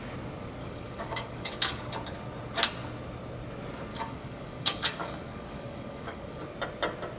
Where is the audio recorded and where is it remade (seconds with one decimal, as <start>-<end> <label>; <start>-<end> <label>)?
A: 0.0-0.6 recorded; 0.6-1.8 remade; 1.8-3.9 recorded; 3.9-6.4 remade; 6.4-7.2 recorded